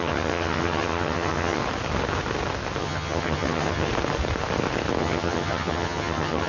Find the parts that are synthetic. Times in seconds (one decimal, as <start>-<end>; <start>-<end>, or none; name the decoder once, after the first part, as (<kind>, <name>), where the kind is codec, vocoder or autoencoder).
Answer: 0.0-1.6 (vocoder, HiFi-GAN); 2.8-3.9; 5.0-6.5